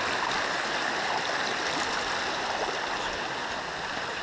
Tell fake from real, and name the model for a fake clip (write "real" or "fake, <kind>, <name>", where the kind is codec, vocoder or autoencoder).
real